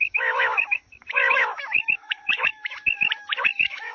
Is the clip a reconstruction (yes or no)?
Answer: yes